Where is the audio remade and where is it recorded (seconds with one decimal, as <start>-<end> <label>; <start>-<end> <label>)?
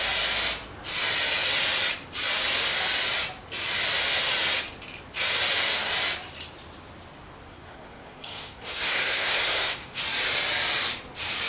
0.0-7.5 recorded; 7.5-10.0 remade; 10.0-11.5 recorded